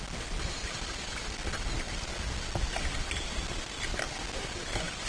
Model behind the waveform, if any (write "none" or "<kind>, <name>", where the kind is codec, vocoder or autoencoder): none